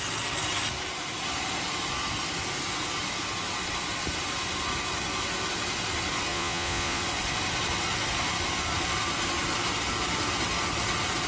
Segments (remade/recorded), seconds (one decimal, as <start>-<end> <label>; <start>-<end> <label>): 0.0-6.3 recorded; 6.3-7.0 remade; 7.0-11.3 recorded